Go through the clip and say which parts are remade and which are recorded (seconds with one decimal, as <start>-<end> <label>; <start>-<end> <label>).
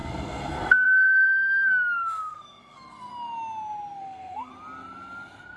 0.0-3.1 remade; 3.1-4.0 recorded; 4.0-4.5 remade; 4.5-5.6 recorded